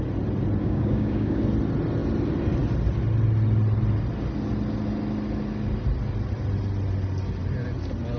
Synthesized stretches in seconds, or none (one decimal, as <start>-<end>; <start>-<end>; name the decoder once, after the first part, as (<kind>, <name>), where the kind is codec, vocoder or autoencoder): 0.6-1.4 (codec, DAC)